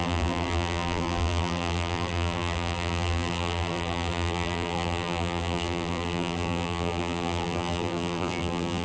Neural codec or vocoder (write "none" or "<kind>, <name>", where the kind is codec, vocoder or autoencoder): vocoder, BigVGAN v2